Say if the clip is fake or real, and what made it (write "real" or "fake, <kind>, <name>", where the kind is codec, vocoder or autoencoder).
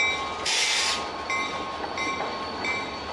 real